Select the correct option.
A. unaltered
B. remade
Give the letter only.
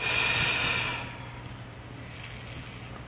A